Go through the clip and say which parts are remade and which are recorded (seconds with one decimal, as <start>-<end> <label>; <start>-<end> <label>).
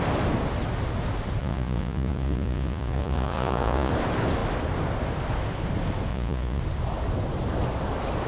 0.0-1.4 recorded; 1.4-3.9 remade; 3.9-6.1 recorded; 6.1-6.6 remade; 6.6-8.3 recorded